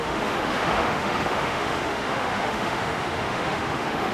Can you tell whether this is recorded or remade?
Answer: remade